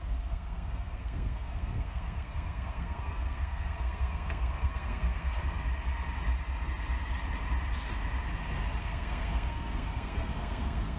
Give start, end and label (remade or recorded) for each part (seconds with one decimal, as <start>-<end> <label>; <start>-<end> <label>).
0.0-5.4 remade; 5.4-8.8 recorded; 8.8-11.0 remade